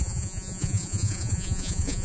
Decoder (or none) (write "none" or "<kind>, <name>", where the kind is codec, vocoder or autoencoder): vocoder, Vocos